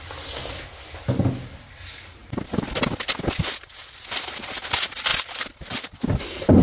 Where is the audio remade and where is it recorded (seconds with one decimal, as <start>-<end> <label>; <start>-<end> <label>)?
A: 0.0-6.6 recorded